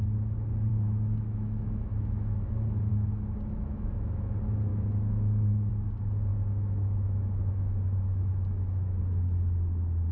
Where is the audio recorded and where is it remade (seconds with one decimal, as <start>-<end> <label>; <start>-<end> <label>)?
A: 0.0-0.7 recorded; 0.7-2.5 remade; 2.5-2.9 recorded; 2.9-4.3 remade; 4.3-4.7 recorded; 4.7-5.7 remade; 5.7-6.3 recorded; 6.3-9.0 remade; 9.0-10.1 recorded